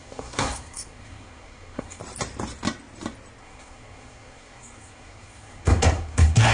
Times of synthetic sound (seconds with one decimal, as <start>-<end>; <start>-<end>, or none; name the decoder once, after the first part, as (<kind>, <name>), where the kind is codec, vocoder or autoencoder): 0.0-2.0 (codec, SNAC); 3.4-6.5